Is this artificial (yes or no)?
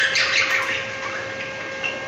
yes